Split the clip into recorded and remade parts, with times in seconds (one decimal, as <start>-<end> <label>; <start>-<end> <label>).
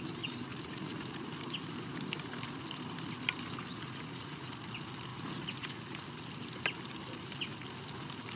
0.0-0.5 recorded; 0.5-1.3 remade; 1.3-3.7 recorded; 3.7-4.5 remade; 4.5-5.1 recorded; 5.1-6.0 remade; 6.0-8.4 recorded